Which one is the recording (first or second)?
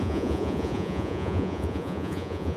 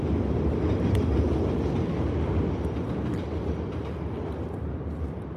second